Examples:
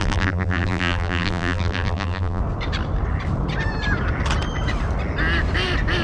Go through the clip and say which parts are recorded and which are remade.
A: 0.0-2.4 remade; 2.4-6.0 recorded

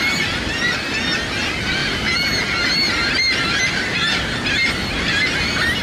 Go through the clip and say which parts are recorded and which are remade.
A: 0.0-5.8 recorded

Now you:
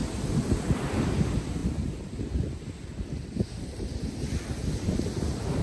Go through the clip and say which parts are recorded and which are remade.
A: 0.0-5.6 recorded

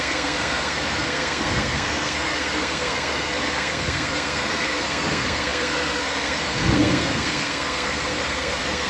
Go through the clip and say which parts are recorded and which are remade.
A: 0.0-8.9 remade

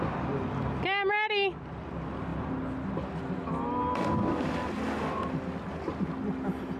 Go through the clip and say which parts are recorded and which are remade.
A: 0.0-6.8 recorded

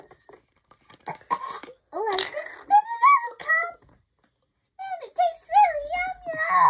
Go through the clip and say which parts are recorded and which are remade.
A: 0.0-6.7 recorded

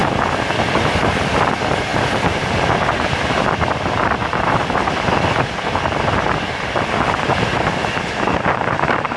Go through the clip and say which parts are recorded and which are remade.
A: 0.0-4.2 recorded; 4.2-5.5 remade; 5.5-9.2 recorded

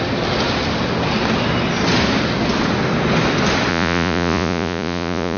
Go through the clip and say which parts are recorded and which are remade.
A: 0.0-3.7 recorded; 3.7-5.4 remade